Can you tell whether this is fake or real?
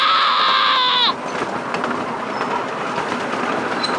real